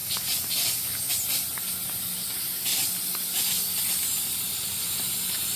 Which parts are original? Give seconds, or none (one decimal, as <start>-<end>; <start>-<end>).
0.0-5.6